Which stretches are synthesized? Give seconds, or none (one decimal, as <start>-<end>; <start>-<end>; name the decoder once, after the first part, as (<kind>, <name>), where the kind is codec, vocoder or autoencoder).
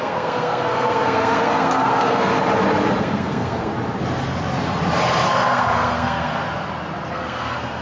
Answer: 0.0-2.3 (codec, SNAC); 3.0-3.7; 5.3-6.3; 7.1-7.8